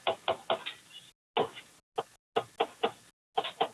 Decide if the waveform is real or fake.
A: real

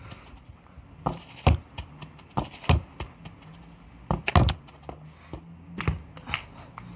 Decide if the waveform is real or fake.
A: real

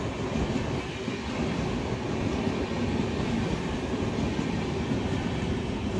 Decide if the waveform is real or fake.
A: real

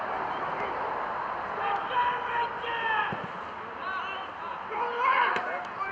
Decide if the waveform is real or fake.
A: real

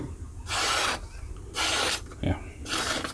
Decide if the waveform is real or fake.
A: real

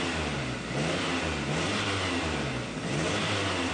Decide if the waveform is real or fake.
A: real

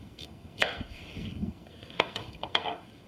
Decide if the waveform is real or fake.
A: fake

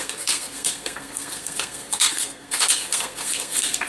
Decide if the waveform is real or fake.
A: fake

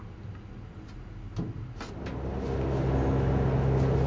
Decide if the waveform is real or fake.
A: real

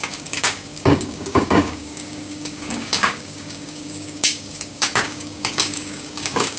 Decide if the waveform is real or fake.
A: fake